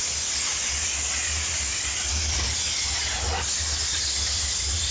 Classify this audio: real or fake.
real